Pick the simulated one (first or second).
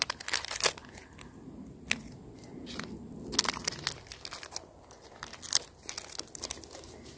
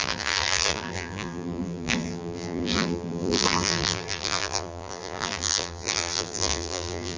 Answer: second